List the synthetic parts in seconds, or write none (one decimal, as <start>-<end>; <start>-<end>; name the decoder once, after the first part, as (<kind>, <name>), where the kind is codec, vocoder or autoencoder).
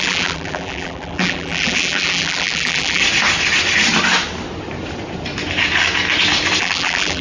0.0-3.0 (vocoder, BigVGAN v2); 6.6-7.2